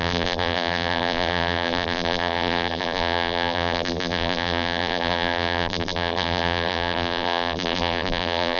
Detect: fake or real fake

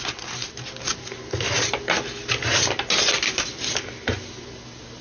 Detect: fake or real real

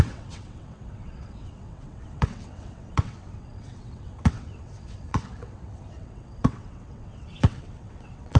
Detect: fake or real fake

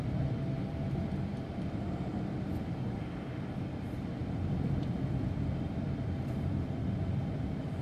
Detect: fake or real fake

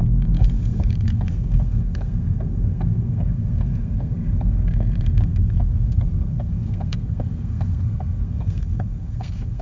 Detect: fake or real fake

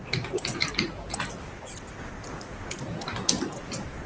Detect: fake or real real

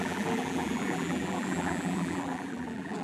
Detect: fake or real fake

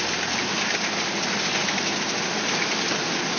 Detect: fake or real real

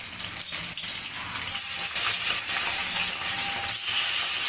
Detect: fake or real real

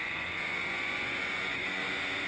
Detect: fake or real fake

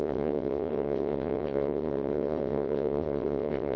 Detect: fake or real fake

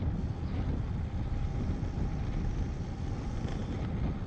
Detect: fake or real real